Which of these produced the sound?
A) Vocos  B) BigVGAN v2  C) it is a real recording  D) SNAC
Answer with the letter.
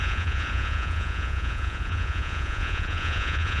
A